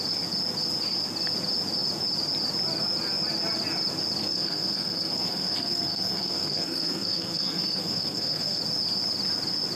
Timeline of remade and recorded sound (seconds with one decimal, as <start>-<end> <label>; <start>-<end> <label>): 0.0-4.2 recorded; 4.2-8.6 remade; 8.6-9.8 recorded